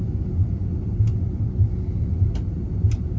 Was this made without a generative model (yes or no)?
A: yes